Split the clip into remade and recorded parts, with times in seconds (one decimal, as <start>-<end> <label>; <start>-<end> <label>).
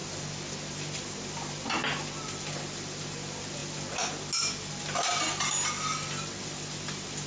0.0-7.3 recorded